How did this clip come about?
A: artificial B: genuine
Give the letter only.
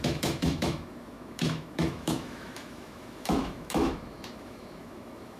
A